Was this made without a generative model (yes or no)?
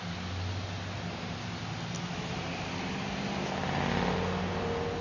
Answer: yes